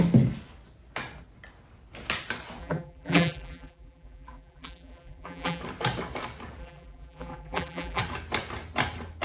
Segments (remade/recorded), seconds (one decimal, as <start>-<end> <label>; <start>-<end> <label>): 0.0-2.6 recorded; 2.6-5.6 remade; 5.6-6.6 recorded; 6.6-8.0 remade; 8.0-9.2 recorded